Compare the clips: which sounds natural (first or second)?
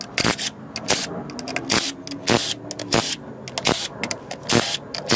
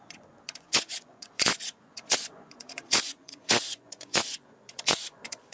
first